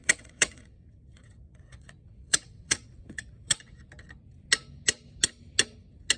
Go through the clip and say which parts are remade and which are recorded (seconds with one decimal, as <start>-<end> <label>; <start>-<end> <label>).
0.0-3.6 remade; 3.6-6.2 recorded